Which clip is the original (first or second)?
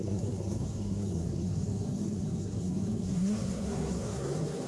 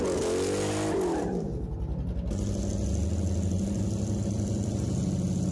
second